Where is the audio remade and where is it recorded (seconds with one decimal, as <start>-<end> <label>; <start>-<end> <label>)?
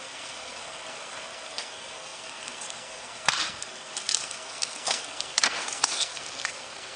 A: 0.0-7.0 remade